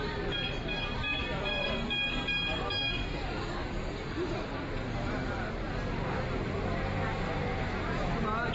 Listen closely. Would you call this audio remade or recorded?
recorded